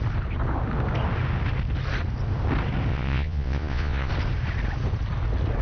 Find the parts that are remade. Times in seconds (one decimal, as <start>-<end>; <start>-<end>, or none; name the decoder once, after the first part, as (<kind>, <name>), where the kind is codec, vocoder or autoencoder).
2.9-4.1 (vocoder, Vocos)